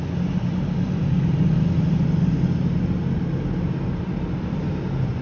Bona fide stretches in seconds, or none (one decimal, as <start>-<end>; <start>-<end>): 0.0-5.2